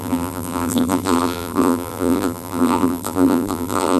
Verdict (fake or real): fake